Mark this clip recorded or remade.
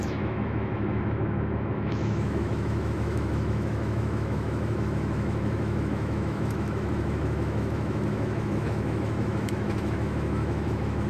remade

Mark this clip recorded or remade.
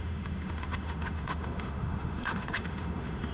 remade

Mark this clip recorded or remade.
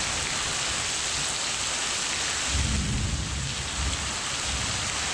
recorded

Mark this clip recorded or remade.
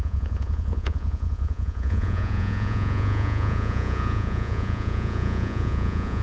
remade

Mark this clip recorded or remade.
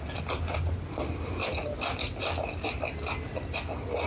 recorded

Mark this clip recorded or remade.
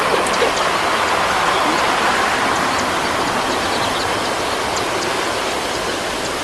recorded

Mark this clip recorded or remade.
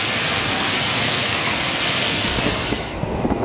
remade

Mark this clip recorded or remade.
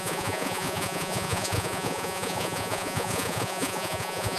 remade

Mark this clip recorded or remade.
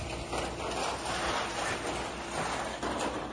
recorded